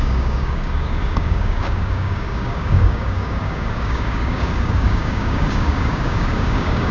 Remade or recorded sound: remade